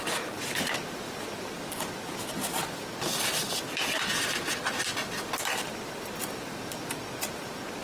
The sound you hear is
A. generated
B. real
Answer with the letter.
B